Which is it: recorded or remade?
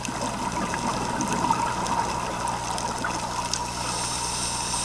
recorded